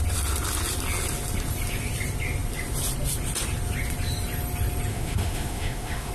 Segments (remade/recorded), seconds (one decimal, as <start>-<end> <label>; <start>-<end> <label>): 0.0-4.9 recorded; 4.9-6.1 remade